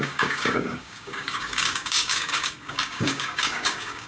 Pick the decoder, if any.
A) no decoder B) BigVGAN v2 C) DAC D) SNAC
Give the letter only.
C